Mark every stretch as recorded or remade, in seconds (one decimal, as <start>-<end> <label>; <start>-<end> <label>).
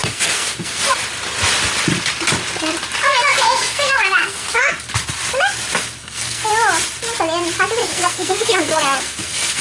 0.0-0.8 remade; 0.8-3.1 recorded; 3.1-4.7 remade; 4.7-6.0 recorded; 6.0-6.5 remade; 6.5-7.8 recorded; 7.8-9.6 remade